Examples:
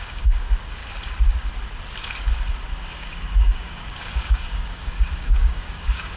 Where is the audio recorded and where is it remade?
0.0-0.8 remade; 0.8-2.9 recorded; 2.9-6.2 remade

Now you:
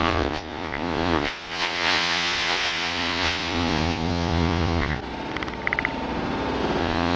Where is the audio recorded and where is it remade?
0.0-5.0 remade; 5.0-6.8 recorded; 6.8-7.2 remade

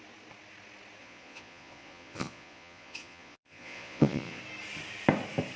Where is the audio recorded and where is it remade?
0.0-1.0 recorded; 1.0-4.4 remade; 4.4-5.6 recorded

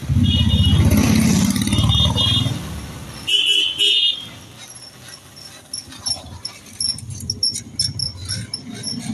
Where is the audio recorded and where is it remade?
0.0-9.1 recorded

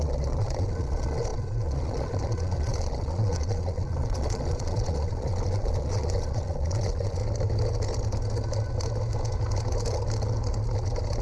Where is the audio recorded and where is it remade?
0.0-7.2 remade; 7.2-11.2 recorded

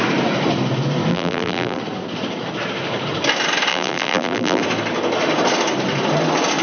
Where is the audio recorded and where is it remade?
0.0-1.1 recorded; 1.1-1.8 remade; 1.8-3.7 recorded; 3.7-4.6 remade; 4.6-6.6 recorded